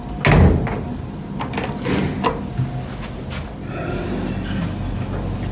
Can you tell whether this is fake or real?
real